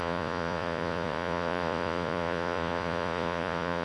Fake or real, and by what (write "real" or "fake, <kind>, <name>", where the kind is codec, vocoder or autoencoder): fake, vocoder, Vocos